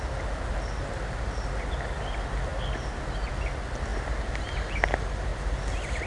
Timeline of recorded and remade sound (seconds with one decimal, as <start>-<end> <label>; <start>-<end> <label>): 0.0-6.1 recorded